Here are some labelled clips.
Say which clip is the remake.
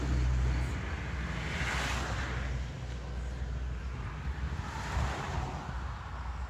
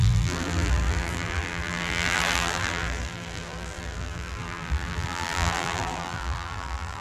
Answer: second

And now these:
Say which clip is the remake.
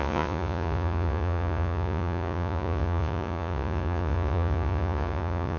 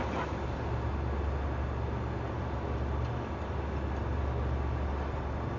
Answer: first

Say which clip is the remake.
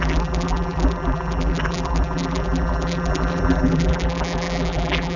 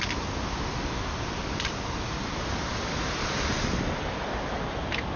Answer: first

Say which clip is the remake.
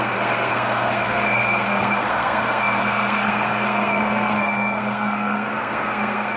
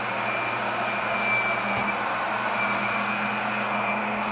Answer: first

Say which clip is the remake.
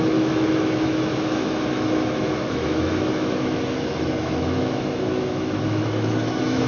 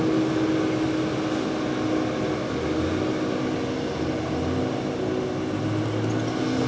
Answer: first